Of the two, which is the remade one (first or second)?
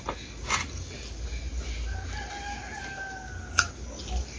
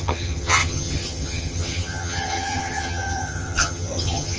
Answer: second